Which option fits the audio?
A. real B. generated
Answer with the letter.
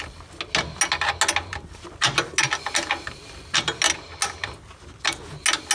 A